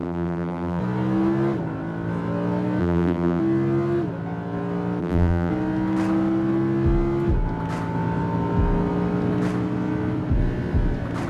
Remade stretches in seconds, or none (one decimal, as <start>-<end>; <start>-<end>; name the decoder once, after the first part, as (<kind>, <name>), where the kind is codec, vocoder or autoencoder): 0.0-0.8 (vocoder, BigVGAN v2); 2.8-3.4; 5.0-5.5